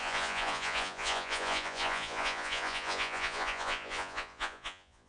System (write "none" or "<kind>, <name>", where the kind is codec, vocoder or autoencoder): vocoder, Vocos